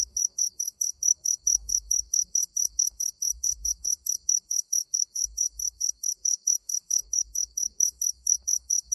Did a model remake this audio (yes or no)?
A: yes